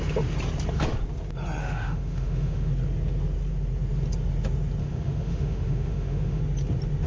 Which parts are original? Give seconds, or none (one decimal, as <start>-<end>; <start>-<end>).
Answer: 0.0-1.6; 2.7-4.8; 6.4-7.1